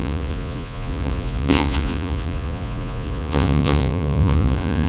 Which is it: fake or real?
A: fake